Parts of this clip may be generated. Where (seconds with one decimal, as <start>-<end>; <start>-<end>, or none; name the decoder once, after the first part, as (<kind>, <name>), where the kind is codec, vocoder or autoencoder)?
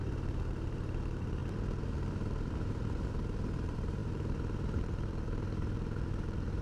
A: 0.0-1.4 (vocoder, BigVGAN v2); 2.1-6.6